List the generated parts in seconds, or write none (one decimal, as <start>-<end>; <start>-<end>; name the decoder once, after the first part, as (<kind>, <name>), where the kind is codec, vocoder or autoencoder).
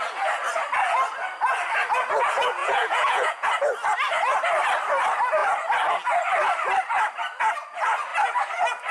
2.6-3.5 (vocoder, Vocos)